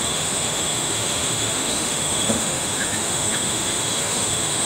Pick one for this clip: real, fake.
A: fake